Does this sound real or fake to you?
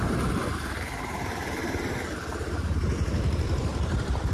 fake